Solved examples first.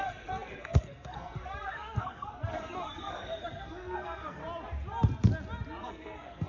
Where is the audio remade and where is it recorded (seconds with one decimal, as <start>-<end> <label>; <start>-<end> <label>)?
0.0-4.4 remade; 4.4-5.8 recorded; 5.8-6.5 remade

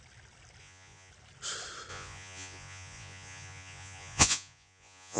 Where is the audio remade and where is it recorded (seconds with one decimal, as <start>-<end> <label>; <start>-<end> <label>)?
0.0-0.6 recorded; 0.6-1.1 remade; 1.1-1.9 recorded; 1.9-5.2 remade

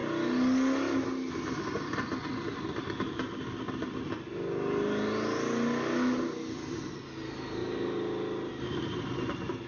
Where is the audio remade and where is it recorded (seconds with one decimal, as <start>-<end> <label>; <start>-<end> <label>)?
0.0-9.7 recorded

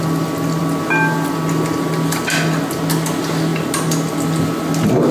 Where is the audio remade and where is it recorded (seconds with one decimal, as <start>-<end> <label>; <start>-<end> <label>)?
0.0-5.1 recorded

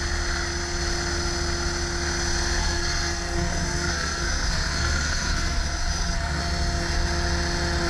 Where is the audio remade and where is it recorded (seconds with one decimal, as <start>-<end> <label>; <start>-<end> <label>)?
0.0-2.6 recorded; 2.6-6.4 remade; 6.4-7.9 recorded

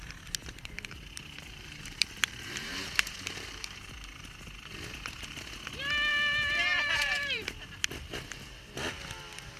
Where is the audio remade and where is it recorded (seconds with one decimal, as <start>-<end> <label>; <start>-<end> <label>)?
0.0-0.4 recorded; 0.4-3.9 remade; 3.9-6.1 recorded; 6.1-7.7 remade; 7.7-9.6 recorded